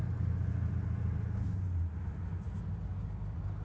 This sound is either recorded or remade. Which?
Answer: recorded